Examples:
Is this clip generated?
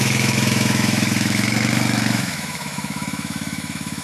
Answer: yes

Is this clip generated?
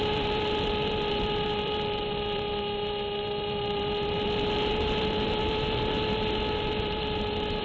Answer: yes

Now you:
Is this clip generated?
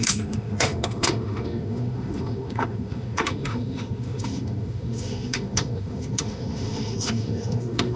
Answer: yes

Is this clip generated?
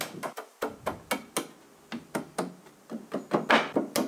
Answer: no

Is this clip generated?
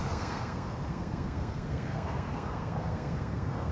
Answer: yes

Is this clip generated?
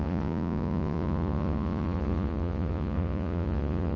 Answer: yes